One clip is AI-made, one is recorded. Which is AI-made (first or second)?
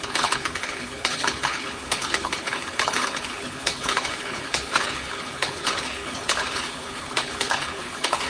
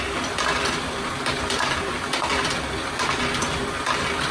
first